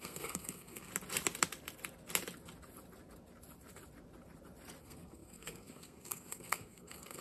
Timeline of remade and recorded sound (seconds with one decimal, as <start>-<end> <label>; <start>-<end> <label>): 0.0-0.9 remade; 0.9-4.8 recorded; 4.8-7.2 remade

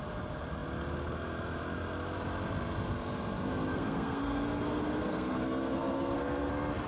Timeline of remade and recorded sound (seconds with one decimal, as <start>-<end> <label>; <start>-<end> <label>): 0.0-3.7 recorded; 3.7-6.5 remade; 6.5-6.9 recorded

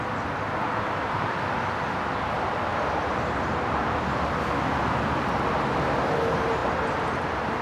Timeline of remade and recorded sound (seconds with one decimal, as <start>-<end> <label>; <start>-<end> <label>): 0.0-7.6 recorded

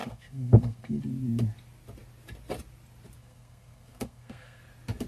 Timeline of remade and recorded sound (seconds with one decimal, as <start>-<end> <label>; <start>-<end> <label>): 0.0-1.0 remade; 1.0-3.2 recorded; 3.2-4.6 remade; 4.6-5.1 recorded

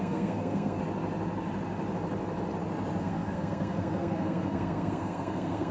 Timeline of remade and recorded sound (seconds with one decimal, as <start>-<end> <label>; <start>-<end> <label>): 0.0-0.8 remade; 0.8-3.0 recorded; 3.0-5.7 remade

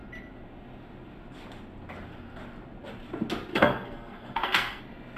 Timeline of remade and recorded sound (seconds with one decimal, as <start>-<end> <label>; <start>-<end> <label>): 0.0-3.5 recorded; 3.5-4.8 remade; 4.8-5.2 recorded

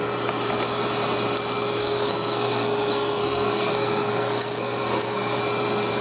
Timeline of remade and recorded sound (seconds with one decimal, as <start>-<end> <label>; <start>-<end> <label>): 0.0-1.8 recorded; 1.8-5.4 remade; 5.4-6.0 recorded